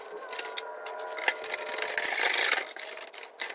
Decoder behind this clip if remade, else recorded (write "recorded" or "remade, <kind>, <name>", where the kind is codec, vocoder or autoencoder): recorded